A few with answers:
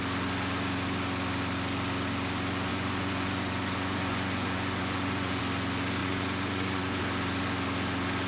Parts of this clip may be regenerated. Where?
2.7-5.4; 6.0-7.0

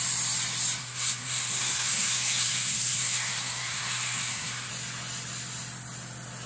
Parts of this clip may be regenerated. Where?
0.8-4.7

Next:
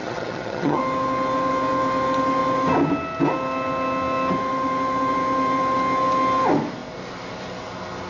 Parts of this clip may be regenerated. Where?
0.0-0.8

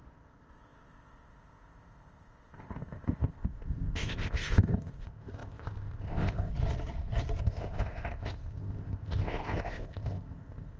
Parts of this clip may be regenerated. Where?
0.0-6.5; 7.4-10.8

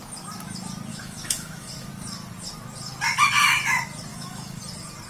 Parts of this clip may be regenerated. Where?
0.9-1.9; 4.1-4.6

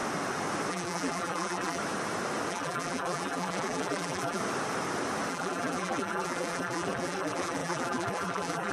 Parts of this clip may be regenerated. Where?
0.7-1.8; 2.5-4.4; 5.3-8.7

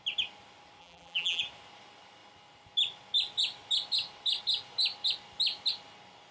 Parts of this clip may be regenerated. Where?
0.8-1.4

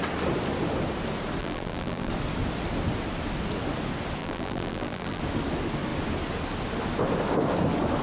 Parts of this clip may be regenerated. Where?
1.4-2.1; 4.2-5.2